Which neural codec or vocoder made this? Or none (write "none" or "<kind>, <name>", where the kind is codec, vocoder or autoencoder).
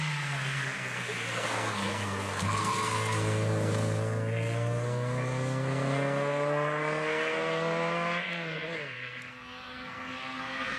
codec, SNAC